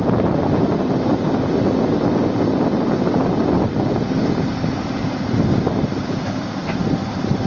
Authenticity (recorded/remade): recorded